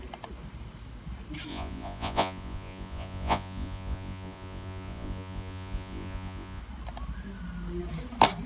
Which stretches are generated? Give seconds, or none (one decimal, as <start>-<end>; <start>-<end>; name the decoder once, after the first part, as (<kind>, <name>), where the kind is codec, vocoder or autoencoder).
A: 1.5-6.6 (vocoder, Vocos)